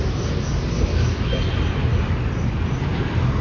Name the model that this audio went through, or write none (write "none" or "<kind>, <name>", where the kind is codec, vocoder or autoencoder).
none